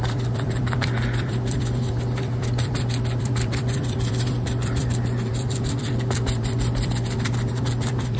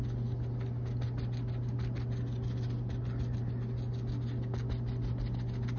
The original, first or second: second